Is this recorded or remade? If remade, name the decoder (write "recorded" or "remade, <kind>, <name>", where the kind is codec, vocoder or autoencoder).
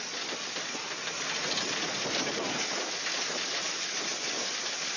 recorded